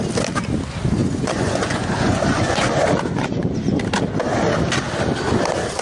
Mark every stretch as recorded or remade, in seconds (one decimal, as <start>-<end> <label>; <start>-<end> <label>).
0.0-1.0 recorded; 1.0-3.8 remade; 3.8-5.8 recorded